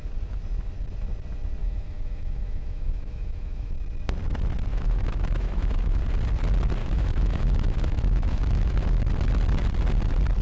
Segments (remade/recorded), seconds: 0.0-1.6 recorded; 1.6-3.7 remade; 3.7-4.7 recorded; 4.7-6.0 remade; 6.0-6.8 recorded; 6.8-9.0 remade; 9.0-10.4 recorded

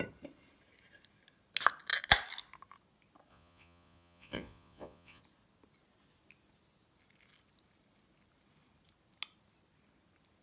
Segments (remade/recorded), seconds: 0.0-3.3 recorded; 3.3-5.2 remade; 5.2-10.4 recorded

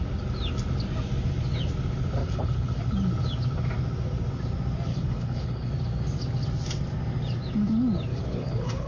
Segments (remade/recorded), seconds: 0.0-2.2 recorded; 2.2-2.8 remade; 2.8-4.9 recorded; 4.9-5.7 remade; 5.7-8.1 recorded; 8.1-8.9 remade

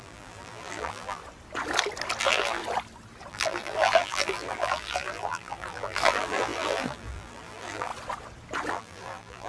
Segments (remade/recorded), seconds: 0.0-1.2 remade; 1.2-2.2 recorded; 2.2-2.6 remade; 2.6-3.3 recorded; 3.3-7.9 remade; 7.9-8.7 recorded; 8.7-9.5 remade

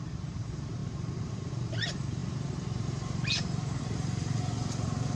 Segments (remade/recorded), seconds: 0.0-5.2 remade

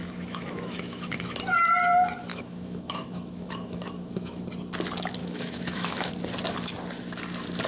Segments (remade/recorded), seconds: 0.0-1.2 remade; 1.2-2.3 recorded; 2.3-4.4 remade; 4.4-5.2 recorded; 5.2-6.1 remade; 6.1-7.7 recorded

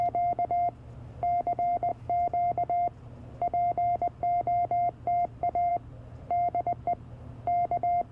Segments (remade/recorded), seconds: 0.0-8.1 recorded